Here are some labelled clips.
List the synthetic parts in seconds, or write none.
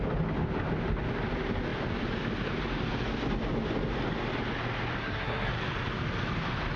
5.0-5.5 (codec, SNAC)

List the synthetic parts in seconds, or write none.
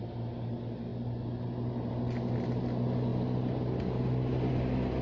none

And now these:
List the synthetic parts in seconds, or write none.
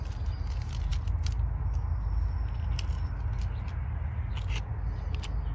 none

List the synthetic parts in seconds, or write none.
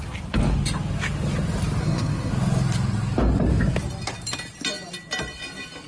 1.8-2.3 (codec, SNAC)